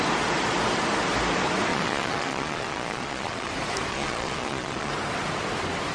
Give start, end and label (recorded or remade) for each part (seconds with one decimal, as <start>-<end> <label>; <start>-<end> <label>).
0.0-1.7 recorded; 1.7-3.5 remade; 3.5-3.9 recorded; 3.9-4.9 remade; 4.9-5.9 recorded